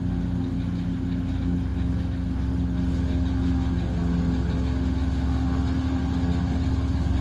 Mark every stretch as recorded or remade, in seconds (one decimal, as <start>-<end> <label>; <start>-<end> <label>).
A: 0.0-7.2 recorded